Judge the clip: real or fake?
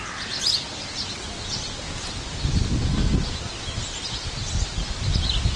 real